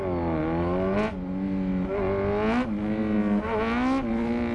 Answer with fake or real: real